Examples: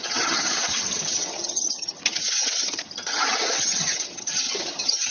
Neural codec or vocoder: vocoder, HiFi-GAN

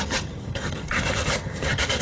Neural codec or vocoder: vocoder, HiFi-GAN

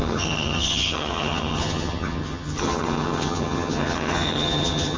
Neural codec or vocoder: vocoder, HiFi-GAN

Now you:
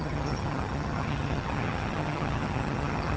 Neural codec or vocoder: vocoder, HiFi-GAN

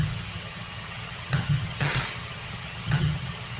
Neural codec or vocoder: vocoder, HiFi-GAN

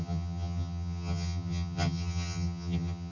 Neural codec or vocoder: vocoder, HiFi-GAN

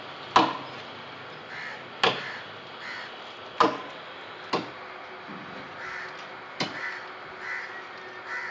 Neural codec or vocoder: none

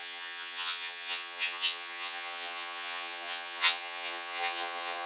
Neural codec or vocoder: vocoder, HiFi-GAN